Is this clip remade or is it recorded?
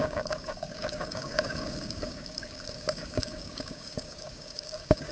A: remade